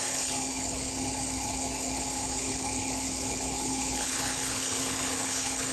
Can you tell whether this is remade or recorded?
remade